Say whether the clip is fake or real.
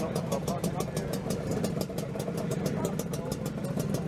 real